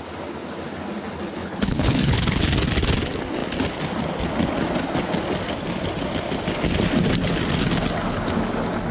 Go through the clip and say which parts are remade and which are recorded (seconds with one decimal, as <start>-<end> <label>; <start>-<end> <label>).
0.0-1.4 recorded; 1.4-2.4 remade; 2.4-8.9 recorded